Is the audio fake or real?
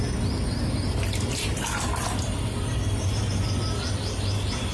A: real